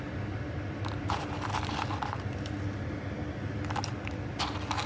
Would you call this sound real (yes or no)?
yes